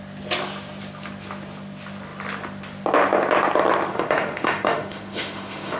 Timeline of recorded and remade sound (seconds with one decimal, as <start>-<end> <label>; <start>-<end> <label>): 0.0-3.9 recorded; 3.9-5.8 remade

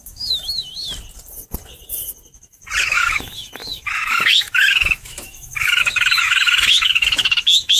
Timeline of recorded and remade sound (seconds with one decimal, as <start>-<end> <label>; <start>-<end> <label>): 0.0-0.7 remade; 0.7-2.8 recorded; 2.8-7.8 remade

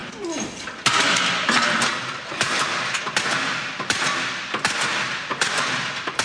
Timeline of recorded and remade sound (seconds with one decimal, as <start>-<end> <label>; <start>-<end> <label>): 0.0-6.2 recorded

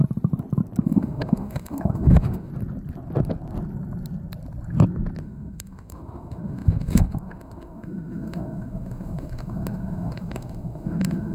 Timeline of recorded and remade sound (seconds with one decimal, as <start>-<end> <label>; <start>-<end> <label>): 0.0-0.8 recorded; 0.8-2.5 remade; 2.5-5.2 recorded; 5.2-11.3 remade